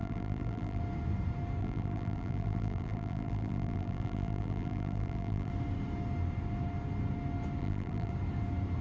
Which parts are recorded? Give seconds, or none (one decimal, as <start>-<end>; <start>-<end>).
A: 0.8-1.6; 5.5-7.6; 8.1-8.8